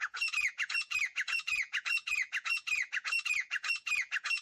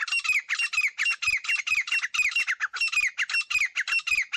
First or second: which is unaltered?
second